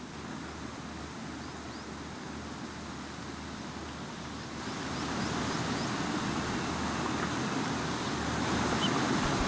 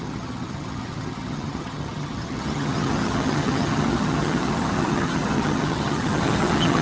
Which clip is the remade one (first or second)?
second